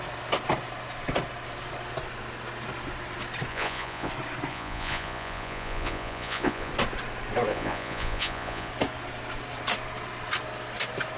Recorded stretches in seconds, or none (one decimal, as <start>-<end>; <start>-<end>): 0.0-3.5; 4.1-4.5; 6.7-7.5; 8.7-11.2